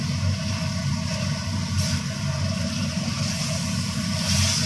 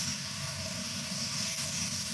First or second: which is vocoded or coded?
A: second